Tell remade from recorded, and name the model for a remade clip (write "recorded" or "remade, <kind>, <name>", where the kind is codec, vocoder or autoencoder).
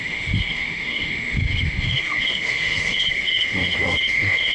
remade, autoencoder, DAC-VAE